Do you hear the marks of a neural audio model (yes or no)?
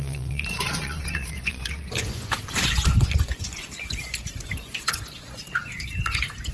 yes